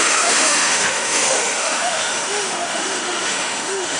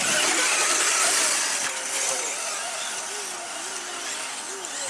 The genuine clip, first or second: second